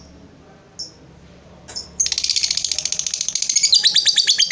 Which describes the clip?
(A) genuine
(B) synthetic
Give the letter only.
A